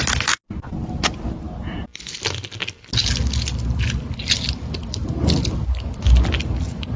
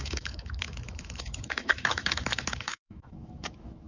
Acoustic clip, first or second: first